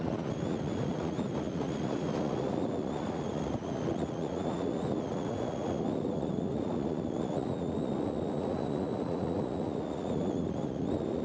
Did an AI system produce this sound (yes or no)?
yes